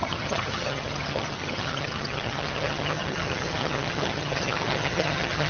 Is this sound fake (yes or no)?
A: yes